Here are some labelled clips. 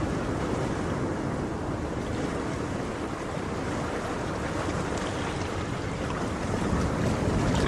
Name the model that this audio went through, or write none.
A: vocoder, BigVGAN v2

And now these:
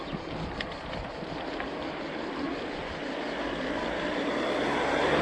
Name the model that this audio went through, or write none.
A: none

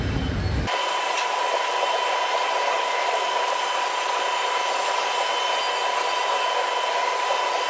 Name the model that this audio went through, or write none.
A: none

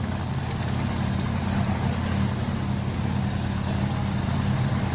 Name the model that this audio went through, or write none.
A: none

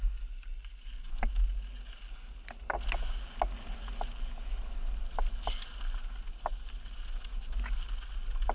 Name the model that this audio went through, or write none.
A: none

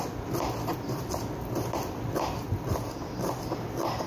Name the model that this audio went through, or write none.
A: none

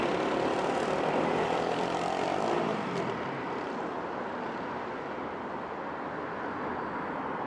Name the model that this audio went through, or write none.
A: vocoder, BigVGAN v2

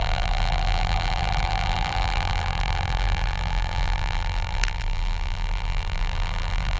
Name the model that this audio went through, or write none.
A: vocoder, BigVGAN v2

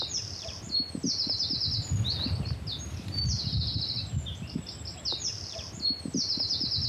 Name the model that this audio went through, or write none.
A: none